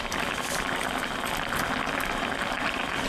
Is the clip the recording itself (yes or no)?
yes